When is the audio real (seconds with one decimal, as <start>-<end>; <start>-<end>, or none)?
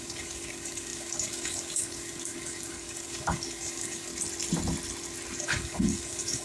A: 4.1-5.4